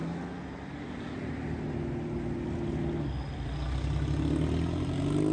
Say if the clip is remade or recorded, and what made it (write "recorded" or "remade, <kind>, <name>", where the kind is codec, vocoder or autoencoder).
recorded